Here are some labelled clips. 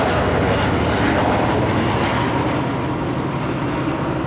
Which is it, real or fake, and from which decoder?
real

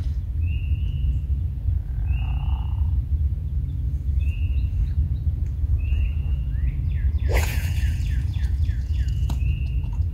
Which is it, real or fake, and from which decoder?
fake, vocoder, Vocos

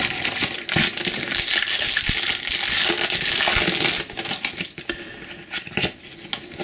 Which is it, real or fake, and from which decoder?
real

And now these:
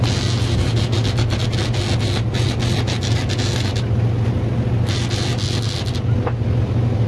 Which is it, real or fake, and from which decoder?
real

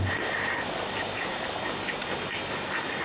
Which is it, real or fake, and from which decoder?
real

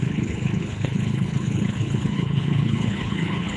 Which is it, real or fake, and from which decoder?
fake, codec, HILCodec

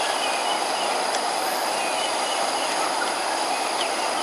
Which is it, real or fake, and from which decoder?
real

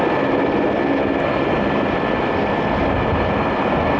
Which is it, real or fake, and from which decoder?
real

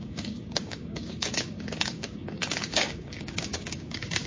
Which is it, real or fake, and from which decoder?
fake, codec, DAC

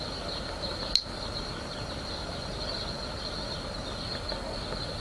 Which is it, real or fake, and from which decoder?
real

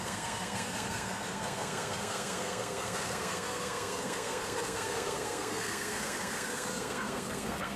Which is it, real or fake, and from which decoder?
fake, codec, SNAC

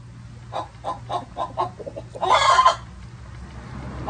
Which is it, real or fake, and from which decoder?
real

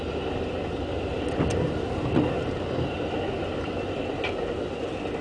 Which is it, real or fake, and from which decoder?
real